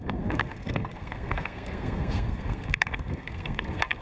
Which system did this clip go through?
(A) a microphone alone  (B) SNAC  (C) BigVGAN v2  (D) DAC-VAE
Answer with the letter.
B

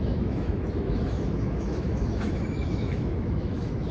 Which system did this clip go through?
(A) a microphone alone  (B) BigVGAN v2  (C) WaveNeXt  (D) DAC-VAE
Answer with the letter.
D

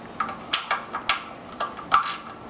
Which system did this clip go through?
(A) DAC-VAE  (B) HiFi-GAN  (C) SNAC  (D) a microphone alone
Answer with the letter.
D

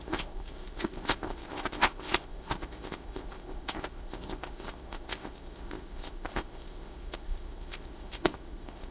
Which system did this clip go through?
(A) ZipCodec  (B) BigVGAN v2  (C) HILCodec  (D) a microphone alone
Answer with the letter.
A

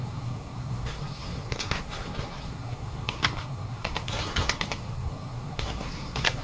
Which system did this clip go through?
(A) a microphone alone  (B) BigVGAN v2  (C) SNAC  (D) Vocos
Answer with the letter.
C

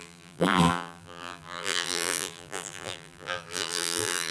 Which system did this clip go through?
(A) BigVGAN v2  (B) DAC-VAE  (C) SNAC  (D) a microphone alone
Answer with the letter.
A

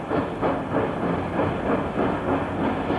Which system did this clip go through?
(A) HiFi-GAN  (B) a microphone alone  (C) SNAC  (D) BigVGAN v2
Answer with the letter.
B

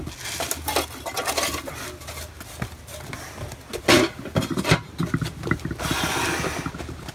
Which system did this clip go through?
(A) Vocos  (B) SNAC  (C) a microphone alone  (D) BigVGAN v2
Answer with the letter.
C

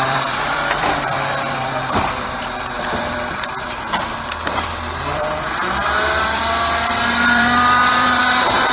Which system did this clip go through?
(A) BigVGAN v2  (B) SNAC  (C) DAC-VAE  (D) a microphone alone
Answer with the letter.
A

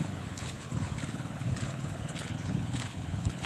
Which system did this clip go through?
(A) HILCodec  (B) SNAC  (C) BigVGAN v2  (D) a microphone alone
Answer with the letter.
A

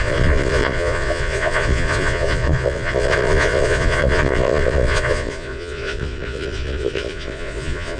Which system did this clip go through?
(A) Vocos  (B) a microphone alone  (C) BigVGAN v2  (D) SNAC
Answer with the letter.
A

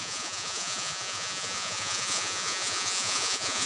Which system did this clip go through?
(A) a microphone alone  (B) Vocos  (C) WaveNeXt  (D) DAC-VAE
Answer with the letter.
B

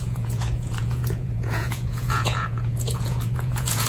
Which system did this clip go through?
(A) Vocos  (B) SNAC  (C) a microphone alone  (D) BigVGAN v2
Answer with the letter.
A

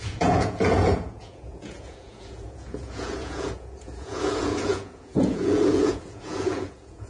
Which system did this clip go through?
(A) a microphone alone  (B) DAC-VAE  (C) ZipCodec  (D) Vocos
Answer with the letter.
D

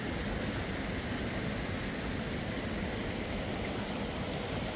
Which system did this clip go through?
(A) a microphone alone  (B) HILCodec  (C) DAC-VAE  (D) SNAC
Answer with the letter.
A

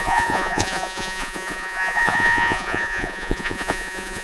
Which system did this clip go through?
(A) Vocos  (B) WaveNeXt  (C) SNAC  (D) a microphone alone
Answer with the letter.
A